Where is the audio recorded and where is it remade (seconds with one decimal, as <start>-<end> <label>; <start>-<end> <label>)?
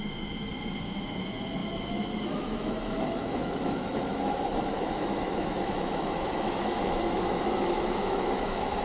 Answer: 0.0-8.8 remade